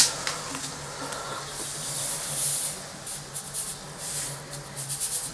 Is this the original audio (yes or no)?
yes